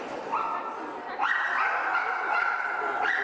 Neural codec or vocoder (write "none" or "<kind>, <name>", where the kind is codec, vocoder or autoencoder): none